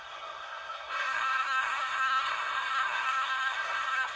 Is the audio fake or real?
fake